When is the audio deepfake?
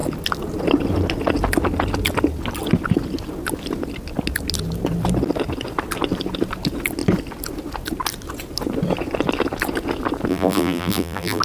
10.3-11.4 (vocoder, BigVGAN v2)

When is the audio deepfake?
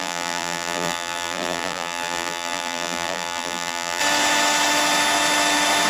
0.0-4.0 (vocoder, BigVGAN v2)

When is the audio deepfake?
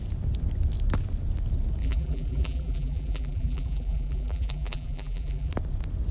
1.8-5.5 (vocoder, BigVGAN v2)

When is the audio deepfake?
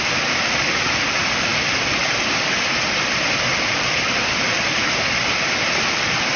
0.0-1.5 (vocoder, BigVGAN v2); 4.8-6.4